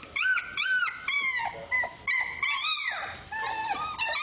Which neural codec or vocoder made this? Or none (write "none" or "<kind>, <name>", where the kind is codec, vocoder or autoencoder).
none